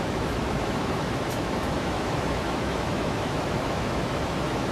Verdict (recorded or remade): remade